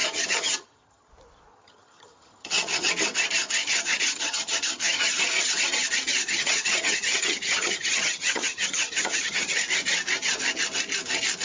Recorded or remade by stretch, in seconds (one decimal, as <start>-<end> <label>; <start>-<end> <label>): 0.0-1.1 remade; 1.1-1.5 recorded; 1.5-2.9 remade; 2.9-3.6 recorded; 3.6-5.1 remade; 5.1-6.2 recorded; 6.2-9.6 remade; 9.6-11.4 recorded

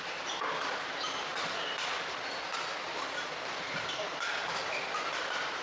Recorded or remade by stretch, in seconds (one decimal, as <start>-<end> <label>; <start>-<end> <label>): 0.0-5.6 recorded

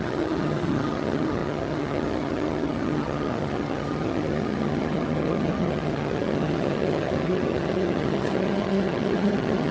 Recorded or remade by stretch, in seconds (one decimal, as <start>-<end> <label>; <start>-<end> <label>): 0.0-9.7 remade

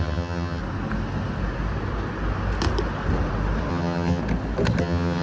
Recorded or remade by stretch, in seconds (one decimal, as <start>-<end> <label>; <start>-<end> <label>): 0.0-0.6 remade; 0.6-3.7 recorded; 3.7-4.2 remade; 4.2-4.8 recorded; 4.8-5.2 remade

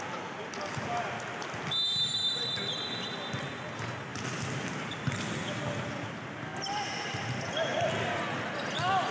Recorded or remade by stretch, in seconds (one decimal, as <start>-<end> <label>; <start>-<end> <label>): 0.0-9.1 recorded

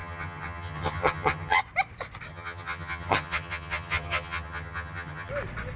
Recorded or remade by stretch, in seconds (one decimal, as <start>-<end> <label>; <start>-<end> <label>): 0.0-1.6 remade; 1.6-2.3 recorded; 2.3-5.3 remade; 5.3-5.8 recorded